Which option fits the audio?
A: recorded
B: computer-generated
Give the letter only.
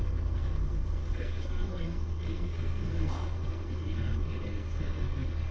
B